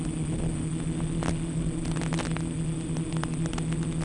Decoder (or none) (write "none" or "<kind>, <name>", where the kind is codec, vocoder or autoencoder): none